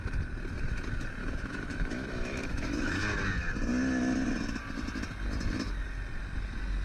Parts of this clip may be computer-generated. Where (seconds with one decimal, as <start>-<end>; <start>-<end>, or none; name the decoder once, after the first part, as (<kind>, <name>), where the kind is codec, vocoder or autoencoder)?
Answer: 1.2-3.0 (autoencoder, DAC-VAE)